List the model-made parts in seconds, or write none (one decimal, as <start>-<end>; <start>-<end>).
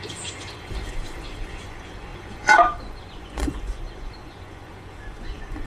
0.0-5.7